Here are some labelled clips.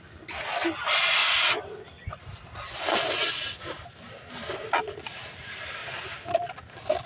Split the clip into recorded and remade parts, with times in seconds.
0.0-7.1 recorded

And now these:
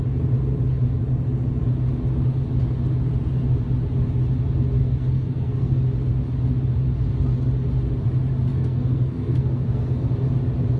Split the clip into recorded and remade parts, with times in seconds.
0.0-4.8 recorded; 4.8-5.8 remade; 5.8-8.5 recorded; 8.5-10.1 remade; 10.1-10.8 recorded